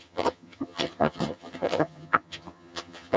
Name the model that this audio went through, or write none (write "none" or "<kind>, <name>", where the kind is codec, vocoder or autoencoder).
vocoder, HiFi-GAN